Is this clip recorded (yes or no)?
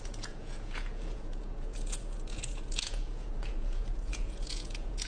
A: no